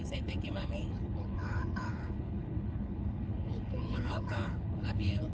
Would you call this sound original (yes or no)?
no